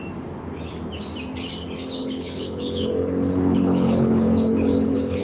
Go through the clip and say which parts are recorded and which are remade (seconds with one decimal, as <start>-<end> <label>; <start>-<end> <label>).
0.0-2.0 recorded; 2.0-5.2 remade